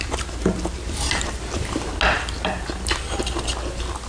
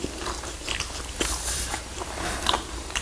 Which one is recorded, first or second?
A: first